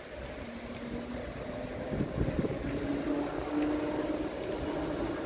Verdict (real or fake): real